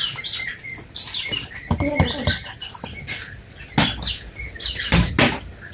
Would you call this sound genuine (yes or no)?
yes